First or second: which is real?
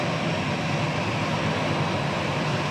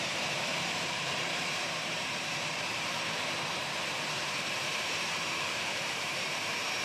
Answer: first